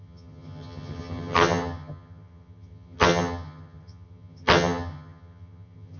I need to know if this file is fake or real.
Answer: fake